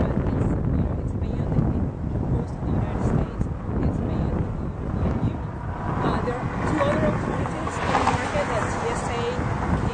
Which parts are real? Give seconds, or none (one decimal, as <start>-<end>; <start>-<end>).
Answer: 0.0-9.9